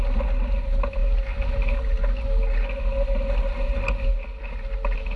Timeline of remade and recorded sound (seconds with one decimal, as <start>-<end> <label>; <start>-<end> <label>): 0.0-5.2 recorded